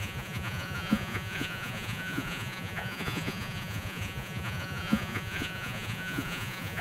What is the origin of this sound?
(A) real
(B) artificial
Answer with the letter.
B